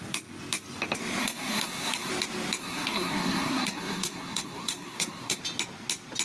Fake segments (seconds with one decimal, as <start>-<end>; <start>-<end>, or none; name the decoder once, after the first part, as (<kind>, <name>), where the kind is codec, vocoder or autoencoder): 1.2-2.1 (codec, SNAC); 2.6-5.4